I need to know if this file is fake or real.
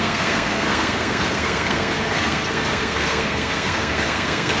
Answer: fake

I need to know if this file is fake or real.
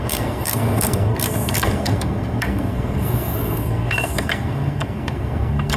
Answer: fake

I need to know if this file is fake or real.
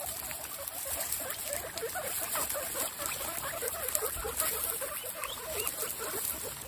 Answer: real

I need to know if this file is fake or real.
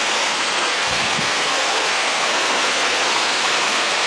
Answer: fake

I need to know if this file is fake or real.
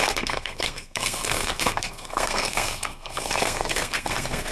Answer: fake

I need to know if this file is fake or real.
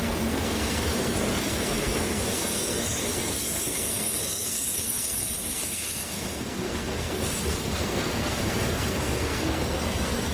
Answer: fake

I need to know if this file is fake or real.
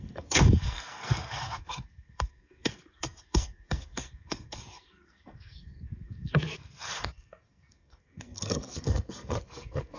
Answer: fake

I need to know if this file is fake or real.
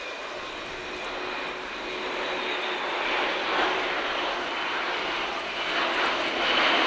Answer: real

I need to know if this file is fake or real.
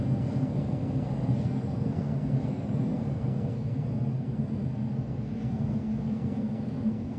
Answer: fake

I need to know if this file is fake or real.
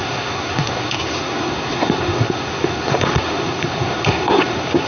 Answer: fake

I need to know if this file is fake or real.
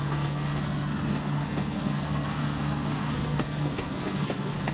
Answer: fake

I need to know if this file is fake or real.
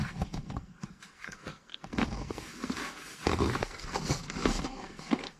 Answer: fake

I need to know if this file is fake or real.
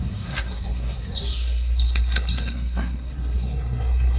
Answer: fake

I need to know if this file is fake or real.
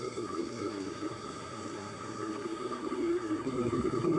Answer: fake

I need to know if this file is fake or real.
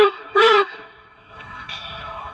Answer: fake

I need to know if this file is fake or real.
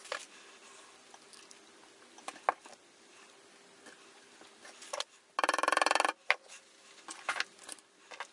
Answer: real